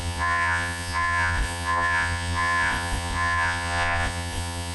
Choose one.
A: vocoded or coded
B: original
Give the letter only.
A